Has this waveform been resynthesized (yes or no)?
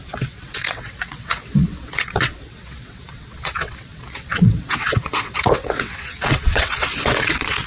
yes